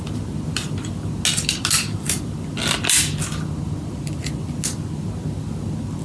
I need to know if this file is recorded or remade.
recorded